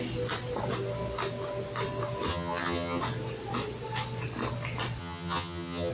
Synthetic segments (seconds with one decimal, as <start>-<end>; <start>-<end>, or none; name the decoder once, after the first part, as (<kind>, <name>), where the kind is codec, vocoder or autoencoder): 2.3-3.0 (vocoder, HiFi-GAN); 5.0-5.9